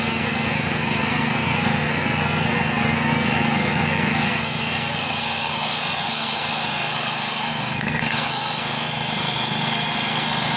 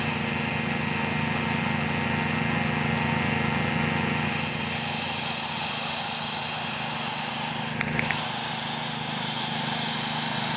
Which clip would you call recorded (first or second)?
second